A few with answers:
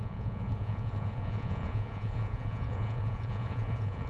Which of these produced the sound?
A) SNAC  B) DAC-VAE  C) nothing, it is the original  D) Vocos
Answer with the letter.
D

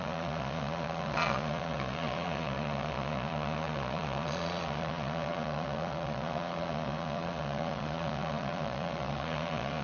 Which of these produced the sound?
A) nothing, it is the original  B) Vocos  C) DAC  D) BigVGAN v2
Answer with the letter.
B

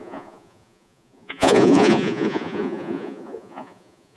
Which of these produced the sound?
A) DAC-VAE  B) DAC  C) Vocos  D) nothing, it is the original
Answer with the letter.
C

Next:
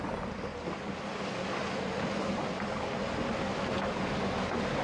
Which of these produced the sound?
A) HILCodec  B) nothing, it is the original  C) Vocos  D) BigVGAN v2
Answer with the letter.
B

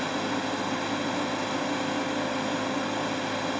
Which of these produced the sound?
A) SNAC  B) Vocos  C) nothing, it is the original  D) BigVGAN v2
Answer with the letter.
C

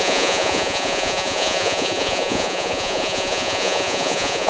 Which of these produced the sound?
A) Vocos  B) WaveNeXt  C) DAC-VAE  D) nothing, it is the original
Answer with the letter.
A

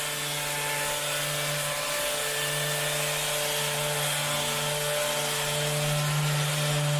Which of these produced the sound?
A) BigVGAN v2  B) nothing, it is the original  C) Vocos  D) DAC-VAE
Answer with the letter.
B